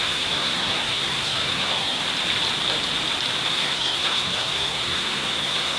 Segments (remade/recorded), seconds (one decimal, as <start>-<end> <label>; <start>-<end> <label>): 0.0-2.0 remade; 2.0-3.5 recorded; 3.5-5.8 remade